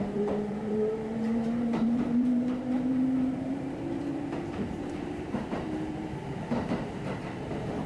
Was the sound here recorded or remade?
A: remade